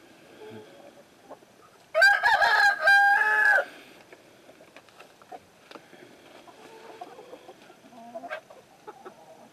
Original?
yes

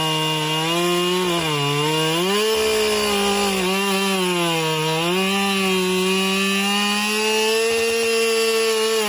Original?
yes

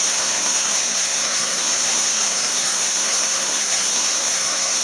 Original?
no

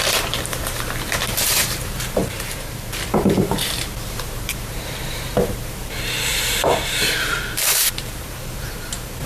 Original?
no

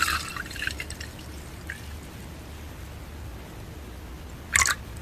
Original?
yes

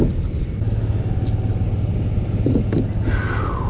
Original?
yes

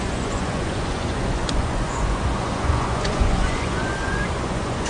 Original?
no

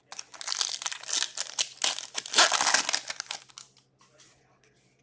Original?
yes